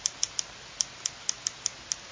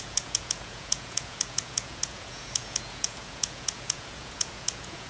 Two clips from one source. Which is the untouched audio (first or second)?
first